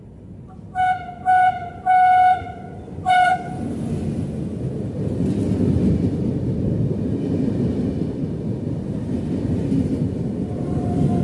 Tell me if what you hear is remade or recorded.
recorded